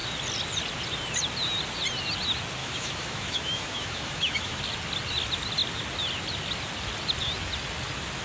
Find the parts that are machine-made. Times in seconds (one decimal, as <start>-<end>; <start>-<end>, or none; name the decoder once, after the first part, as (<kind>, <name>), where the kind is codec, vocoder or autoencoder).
2.6-4.6 (autoencoder, DAC-VAE)